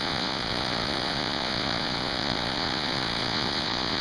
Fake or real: fake